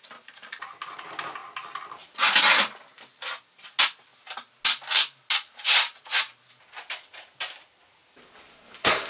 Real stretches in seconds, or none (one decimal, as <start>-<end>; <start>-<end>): 0.0-8.5